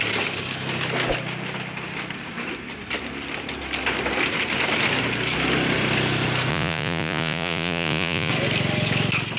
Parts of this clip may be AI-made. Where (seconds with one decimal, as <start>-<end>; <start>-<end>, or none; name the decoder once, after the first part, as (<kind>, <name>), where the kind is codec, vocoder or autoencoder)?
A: 6.5-8.3 (vocoder, Vocos)

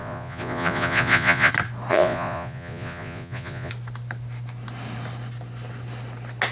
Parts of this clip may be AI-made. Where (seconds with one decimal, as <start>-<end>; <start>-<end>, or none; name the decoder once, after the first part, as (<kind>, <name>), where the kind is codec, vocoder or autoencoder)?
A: 0.0-1.5 (vocoder, Vocos); 1.9-3.7

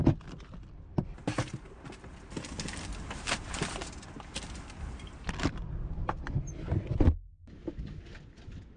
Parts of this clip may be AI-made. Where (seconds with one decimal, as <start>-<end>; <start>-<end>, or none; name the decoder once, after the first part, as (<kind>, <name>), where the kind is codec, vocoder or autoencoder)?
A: none

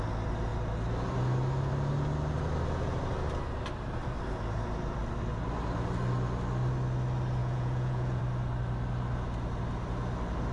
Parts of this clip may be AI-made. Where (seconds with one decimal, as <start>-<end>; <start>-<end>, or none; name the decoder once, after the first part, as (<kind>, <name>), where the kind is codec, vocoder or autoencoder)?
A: 7.4-8.2 (vocoder, Vocos)

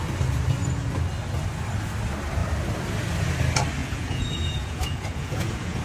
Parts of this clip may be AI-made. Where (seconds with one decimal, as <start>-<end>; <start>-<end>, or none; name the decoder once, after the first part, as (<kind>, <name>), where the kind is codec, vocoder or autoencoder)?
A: 3.8-5.8 (vocoder, Vocos)

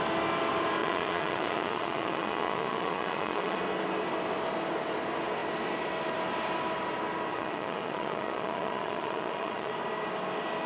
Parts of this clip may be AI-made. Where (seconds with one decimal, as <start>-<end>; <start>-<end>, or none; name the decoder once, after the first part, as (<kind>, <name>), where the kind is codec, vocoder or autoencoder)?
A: 0.8-3.6 (vocoder, Vocos); 7.3-9.7

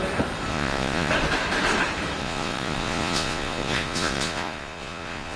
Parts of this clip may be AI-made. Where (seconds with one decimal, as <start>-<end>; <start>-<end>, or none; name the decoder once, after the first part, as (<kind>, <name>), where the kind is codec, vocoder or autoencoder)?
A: 0.5-1.1 (vocoder, Vocos); 2.2-5.4

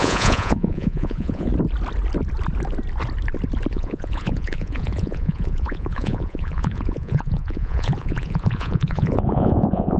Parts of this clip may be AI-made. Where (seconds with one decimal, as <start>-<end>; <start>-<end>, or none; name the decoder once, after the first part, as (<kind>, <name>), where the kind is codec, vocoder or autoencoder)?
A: 0.0-1.5 (vocoder, Vocos); 3.7-10.0